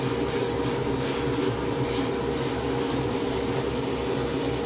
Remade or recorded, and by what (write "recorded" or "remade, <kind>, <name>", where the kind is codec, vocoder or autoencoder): recorded